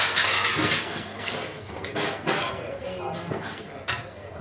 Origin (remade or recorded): remade